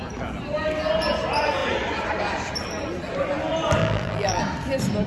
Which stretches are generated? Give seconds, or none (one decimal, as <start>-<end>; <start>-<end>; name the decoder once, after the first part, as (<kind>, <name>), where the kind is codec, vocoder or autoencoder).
3.8-4.4 (vocoder, BigVGAN v2)